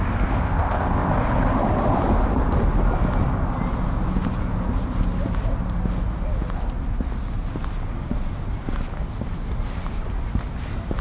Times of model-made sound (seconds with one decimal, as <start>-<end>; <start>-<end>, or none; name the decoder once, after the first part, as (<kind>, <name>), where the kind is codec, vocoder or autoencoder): 0.4-1.1 (codec, ZipCodec)